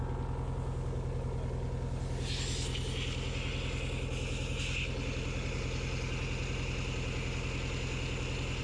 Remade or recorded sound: recorded